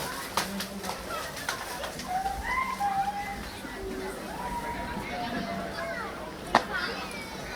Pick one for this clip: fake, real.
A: real